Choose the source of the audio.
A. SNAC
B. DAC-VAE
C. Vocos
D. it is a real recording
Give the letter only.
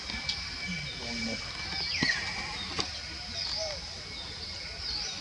D